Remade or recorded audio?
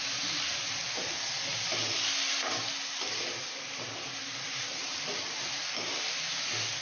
recorded